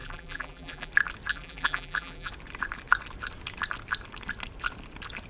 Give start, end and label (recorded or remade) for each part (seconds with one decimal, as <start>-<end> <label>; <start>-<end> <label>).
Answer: 0.0-0.9 remade; 0.9-1.3 recorded; 1.3-2.3 remade; 2.3-5.3 recorded